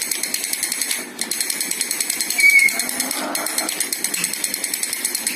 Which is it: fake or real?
real